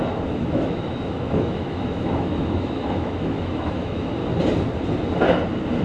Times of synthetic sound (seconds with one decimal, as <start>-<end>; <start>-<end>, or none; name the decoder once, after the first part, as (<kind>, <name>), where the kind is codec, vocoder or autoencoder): 0.0-4.2 (autoencoder, DAC-VAE)